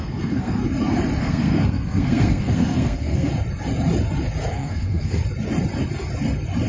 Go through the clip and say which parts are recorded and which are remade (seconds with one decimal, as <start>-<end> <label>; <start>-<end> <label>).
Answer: 0.0-0.6 remade; 0.6-1.2 recorded; 1.2-3.3 remade; 3.3-4.5 recorded; 4.5-5.2 remade; 5.2-6.7 recorded